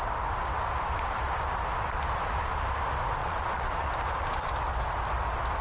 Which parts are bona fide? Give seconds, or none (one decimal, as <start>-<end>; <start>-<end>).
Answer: 0.0-3.2; 3.9-5.6